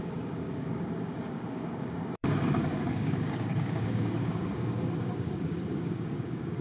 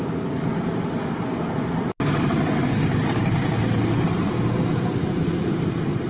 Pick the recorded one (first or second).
second